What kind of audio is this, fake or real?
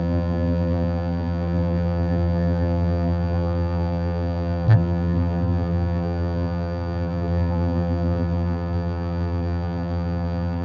fake